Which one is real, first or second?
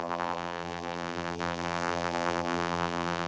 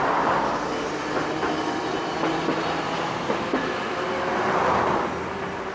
second